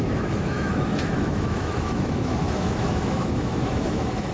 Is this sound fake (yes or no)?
yes